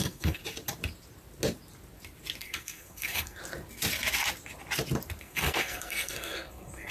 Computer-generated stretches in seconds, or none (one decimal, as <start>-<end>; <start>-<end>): 0.0-0.4; 2.4-3.4; 5.2-6.9